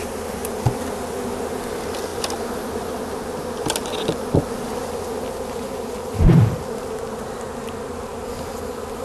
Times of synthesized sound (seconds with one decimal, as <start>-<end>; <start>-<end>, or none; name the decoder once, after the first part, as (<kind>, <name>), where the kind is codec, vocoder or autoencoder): none